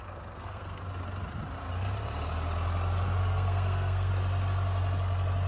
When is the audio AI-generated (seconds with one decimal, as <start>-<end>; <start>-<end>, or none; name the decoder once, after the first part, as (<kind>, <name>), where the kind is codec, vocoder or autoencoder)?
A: 0.0-0.8 (codec, SNAC); 3.2-4.1